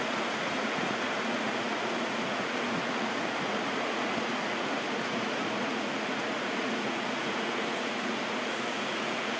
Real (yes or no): no